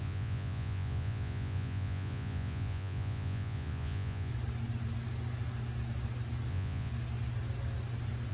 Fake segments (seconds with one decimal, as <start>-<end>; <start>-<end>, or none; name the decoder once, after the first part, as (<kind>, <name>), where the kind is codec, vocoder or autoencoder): 0.0-4.3 (vocoder, Vocos); 6.5-6.9